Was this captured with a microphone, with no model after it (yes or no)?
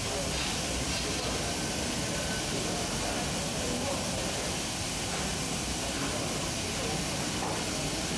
yes